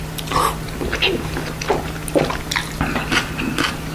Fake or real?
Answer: real